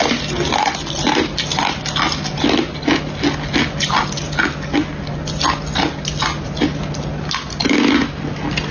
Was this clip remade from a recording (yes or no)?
no